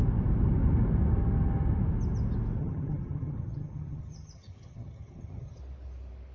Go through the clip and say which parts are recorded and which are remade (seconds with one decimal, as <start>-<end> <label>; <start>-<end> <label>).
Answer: 0.0-2.6 recorded; 2.6-5.6 remade; 5.6-6.3 recorded